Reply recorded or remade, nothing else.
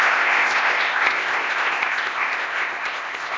remade